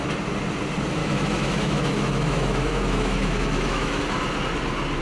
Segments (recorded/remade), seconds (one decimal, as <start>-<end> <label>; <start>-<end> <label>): 0.0-1.0 recorded; 1.0-4.0 remade; 4.0-5.0 recorded